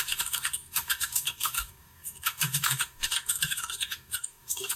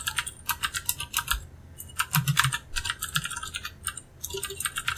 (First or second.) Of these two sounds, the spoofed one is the first